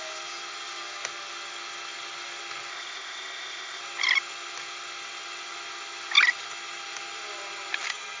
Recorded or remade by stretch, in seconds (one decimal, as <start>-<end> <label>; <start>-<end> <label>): 0.0-2.7 recorded; 2.7-3.8 remade; 3.8-8.2 recorded